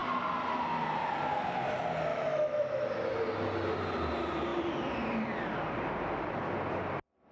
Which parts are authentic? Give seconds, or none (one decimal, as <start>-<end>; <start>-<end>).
0.0-2.1; 2.9-7.3

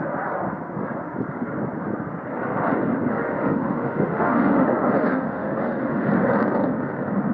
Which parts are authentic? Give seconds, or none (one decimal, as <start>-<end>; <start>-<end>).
0.0-3.1; 6.1-7.3